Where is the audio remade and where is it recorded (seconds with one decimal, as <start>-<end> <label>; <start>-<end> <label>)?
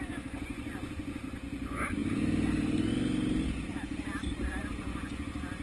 0.0-2.0 remade; 2.0-4.7 recorded; 4.7-5.6 remade